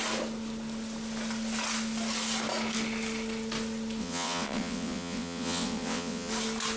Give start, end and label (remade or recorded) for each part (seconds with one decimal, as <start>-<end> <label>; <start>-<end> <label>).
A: 0.0-4.0 recorded; 4.0-6.3 remade; 6.3-6.8 recorded